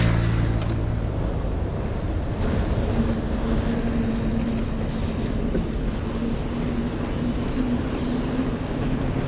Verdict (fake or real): real